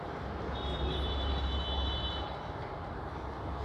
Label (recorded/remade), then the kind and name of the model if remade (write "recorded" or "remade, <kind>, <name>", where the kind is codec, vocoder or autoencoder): recorded